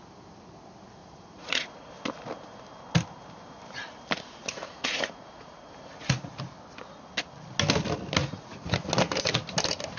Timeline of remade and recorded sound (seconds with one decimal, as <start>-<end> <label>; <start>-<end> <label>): 0.0-1.0 recorded; 1.0-1.9 remade; 1.9-4.4 recorded; 4.4-6.3 remade; 6.3-8.2 recorded; 8.2-8.9 remade; 8.9-10.0 recorded